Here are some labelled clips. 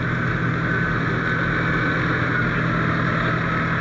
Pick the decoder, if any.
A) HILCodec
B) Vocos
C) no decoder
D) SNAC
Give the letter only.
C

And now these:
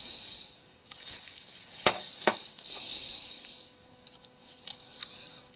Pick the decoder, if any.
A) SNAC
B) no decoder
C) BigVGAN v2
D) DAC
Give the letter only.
D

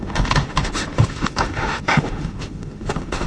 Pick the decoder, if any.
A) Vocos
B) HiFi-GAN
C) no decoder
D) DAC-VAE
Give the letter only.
D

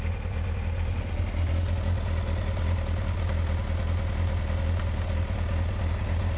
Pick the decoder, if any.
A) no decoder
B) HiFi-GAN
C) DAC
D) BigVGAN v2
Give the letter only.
A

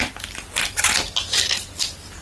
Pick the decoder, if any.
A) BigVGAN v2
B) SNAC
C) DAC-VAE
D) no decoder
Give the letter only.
D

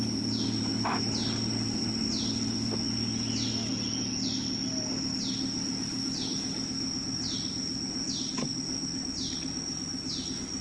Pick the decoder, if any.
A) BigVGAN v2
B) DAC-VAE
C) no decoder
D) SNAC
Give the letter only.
C